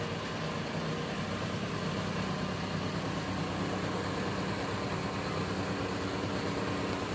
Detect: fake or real real